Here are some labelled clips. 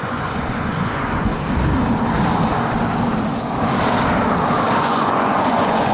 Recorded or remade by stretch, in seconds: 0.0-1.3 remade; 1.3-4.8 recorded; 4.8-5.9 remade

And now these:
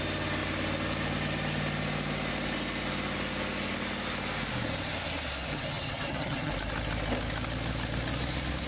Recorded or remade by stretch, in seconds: 0.0-5.5 recorded; 5.5-6.5 remade; 6.5-8.7 recorded

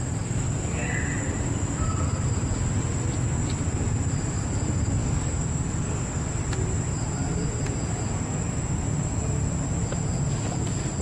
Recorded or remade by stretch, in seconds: 0.0-5.0 recorded; 5.0-6.3 remade; 6.3-11.0 recorded